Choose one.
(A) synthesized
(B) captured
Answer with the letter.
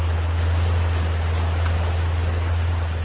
B